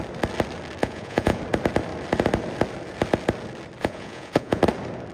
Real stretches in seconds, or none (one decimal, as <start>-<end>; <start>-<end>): 0.0-0.8; 1.4-3.8; 4.6-5.1